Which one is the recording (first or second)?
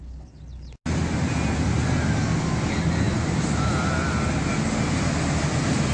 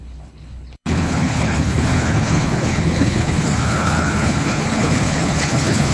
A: first